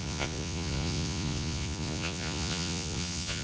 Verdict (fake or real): fake